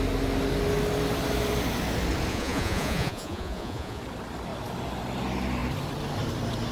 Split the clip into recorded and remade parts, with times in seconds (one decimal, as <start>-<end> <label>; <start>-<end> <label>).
0.0-2.3 recorded; 2.3-4.0 remade; 4.0-6.7 recorded